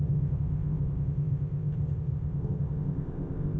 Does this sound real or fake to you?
fake